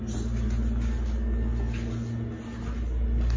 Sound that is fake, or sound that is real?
real